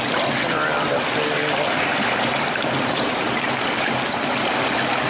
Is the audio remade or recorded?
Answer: recorded